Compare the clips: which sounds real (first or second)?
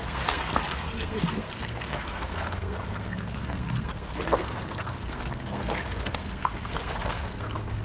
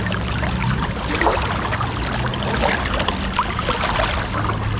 second